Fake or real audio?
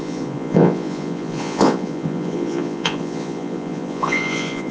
fake